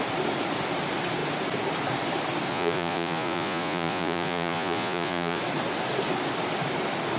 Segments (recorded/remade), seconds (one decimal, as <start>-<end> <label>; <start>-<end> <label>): 0.0-2.5 recorded; 2.5-5.4 remade; 5.4-7.2 recorded